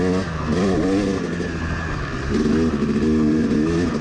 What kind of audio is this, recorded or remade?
recorded